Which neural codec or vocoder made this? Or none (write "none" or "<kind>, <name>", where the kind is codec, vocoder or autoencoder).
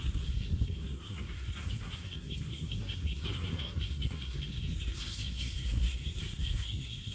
codec, SNAC